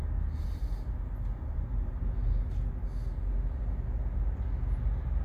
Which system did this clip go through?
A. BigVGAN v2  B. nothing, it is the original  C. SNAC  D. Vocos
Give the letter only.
B